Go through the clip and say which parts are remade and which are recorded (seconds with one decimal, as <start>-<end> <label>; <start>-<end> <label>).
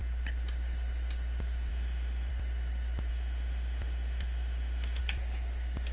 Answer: 0.0-1.7 recorded; 1.7-2.3 remade; 2.3-3.1 recorded; 3.1-5.0 remade; 5.0-5.9 recorded